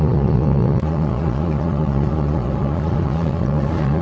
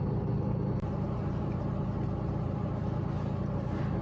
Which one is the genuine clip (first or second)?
second